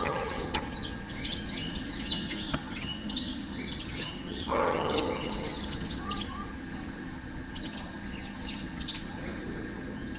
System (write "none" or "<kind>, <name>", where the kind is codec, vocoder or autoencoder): vocoder, HiFi-GAN